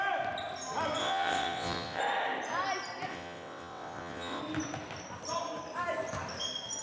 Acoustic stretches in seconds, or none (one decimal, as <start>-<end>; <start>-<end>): 0.0-1.0; 2.0-3.1; 4.4-6.8